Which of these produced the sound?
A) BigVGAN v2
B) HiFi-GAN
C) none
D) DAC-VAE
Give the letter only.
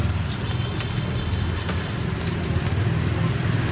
C